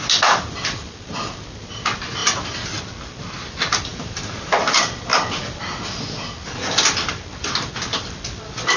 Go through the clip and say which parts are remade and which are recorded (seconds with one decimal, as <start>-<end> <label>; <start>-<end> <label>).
0.0-2.2 recorded; 2.2-2.8 remade; 2.8-3.9 recorded; 3.9-4.6 remade; 4.6-8.8 recorded